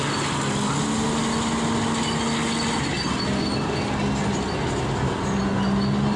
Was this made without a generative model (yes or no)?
yes